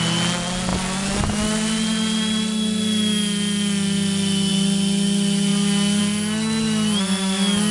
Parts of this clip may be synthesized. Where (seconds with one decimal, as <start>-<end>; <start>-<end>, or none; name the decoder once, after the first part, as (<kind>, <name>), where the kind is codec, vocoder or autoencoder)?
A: none